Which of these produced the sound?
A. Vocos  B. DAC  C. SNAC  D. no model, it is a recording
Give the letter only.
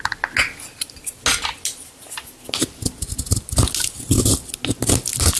D